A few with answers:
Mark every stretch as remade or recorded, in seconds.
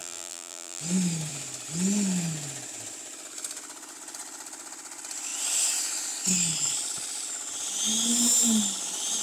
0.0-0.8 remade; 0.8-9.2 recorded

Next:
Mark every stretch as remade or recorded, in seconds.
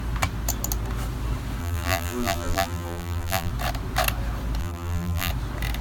0.0-1.6 recorded; 1.6-3.5 remade; 3.5-4.6 recorded; 4.6-5.3 remade; 5.3-5.8 recorded